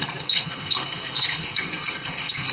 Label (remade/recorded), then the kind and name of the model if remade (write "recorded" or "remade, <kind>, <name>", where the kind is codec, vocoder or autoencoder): remade, codec, SNAC